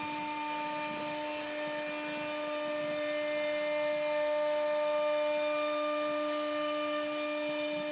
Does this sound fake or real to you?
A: real